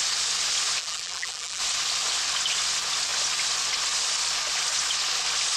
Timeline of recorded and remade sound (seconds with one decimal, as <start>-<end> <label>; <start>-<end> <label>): 0.0-0.8 recorded; 0.8-1.6 remade; 1.6-5.6 recorded